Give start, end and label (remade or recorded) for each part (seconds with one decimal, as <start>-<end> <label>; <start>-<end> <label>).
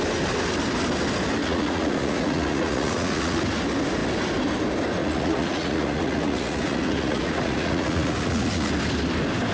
0.0-1.4 recorded; 1.4-3.4 remade; 3.4-5.0 recorded; 5.0-8.7 remade; 8.7-9.5 recorded